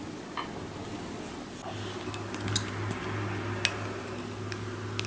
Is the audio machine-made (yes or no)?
no